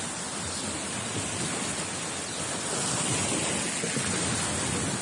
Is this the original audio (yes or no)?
yes